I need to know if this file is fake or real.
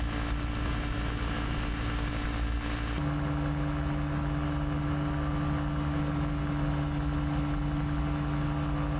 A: real